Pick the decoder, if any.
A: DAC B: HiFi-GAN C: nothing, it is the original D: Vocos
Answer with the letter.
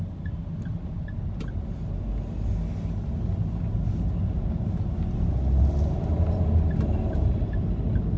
C